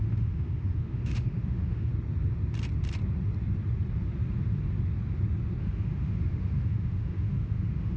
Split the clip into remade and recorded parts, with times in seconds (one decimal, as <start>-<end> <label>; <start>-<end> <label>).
0.0-1.9 remade; 1.9-5.6 recorded; 5.6-8.0 remade